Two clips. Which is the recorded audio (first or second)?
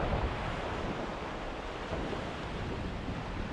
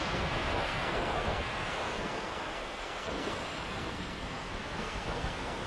first